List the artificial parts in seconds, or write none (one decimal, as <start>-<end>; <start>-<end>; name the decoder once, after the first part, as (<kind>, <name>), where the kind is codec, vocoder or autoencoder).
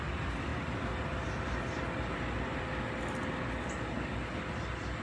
none